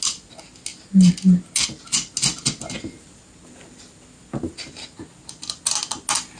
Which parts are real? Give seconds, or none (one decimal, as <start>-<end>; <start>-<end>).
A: 0.0-6.4

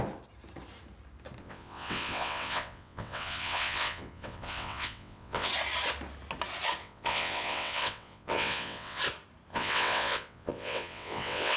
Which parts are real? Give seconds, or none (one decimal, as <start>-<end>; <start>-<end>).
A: 0.0-1.4; 5.5-6.8; 9.0-9.5

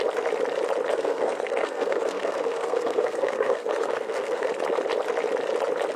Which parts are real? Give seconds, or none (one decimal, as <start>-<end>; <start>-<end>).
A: 0.0-0.9; 4.5-6.0

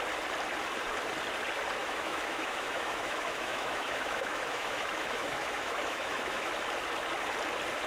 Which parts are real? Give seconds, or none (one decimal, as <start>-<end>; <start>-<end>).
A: 0.0-1.8; 6.5-7.9

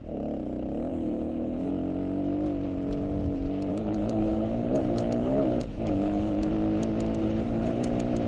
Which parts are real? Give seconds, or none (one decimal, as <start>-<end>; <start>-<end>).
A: 0.0-0.9; 1.7-3.7; 6.5-7.2; 7.9-8.3